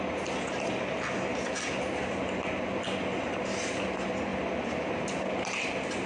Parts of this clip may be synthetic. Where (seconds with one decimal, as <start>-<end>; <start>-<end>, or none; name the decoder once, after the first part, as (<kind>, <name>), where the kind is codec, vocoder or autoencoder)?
none